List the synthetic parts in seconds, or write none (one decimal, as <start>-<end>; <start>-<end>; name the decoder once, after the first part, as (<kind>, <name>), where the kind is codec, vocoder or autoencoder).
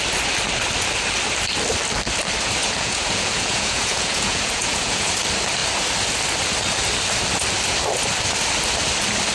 2.6-5.1 (vocoder, Vocos)